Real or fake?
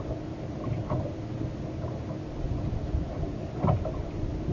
real